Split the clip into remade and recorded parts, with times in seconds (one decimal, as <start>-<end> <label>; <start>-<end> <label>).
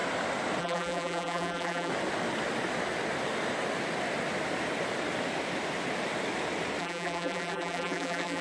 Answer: 0.0-0.6 recorded; 0.6-1.9 remade; 1.9-6.8 recorded; 6.8-8.4 remade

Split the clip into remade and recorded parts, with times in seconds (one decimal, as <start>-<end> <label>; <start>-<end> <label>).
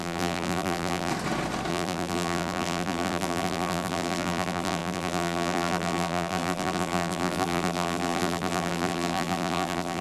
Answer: 0.0-1.1 remade; 1.1-1.7 recorded; 1.7-10.0 remade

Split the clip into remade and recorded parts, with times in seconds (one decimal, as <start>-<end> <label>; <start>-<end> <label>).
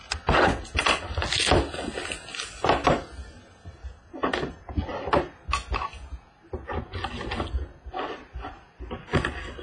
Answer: 0.0-9.6 recorded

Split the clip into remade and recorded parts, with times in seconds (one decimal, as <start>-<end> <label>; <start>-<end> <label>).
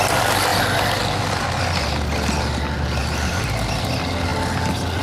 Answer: 0.0-3.0 recorded; 3.0-3.9 remade; 3.9-5.0 recorded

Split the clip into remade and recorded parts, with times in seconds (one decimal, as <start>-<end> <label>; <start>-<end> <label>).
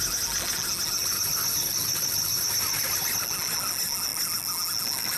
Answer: 0.0-1.0 recorded; 1.0-3.2 remade; 3.2-5.2 recorded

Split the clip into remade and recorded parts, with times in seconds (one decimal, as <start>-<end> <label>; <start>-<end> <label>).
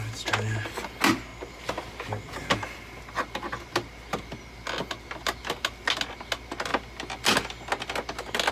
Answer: 0.0-8.5 recorded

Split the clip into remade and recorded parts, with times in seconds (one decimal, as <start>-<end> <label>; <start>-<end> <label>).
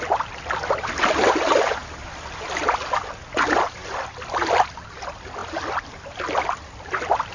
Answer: 0.0-1.8 recorded; 1.8-2.4 remade; 2.4-7.3 recorded